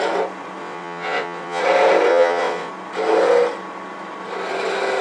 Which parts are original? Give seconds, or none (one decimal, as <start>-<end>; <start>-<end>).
0.0-0.6; 1.6-2.1; 2.7-5.0